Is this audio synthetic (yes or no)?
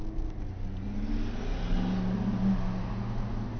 no